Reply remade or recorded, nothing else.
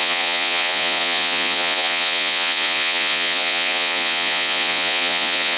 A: remade